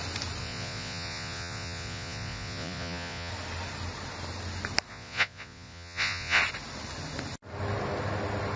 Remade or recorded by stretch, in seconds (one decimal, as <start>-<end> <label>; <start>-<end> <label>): 0.0-0.4 recorded; 0.4-3.3 remade; 3.3-4.9 recorded; 4.9-6.4 remade; 6.4-8.6 recorded